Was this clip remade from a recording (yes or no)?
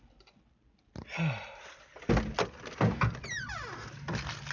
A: no